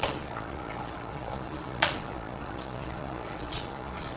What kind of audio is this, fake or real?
fake